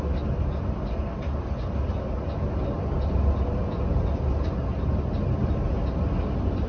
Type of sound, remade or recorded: recorded